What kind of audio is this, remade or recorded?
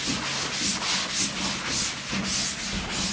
recorded